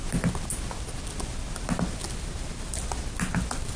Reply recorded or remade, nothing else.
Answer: recorded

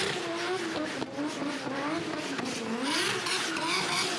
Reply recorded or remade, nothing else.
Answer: recorded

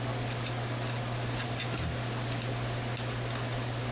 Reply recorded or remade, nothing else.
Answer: recorded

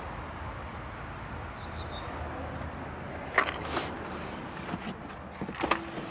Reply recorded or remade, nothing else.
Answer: recorded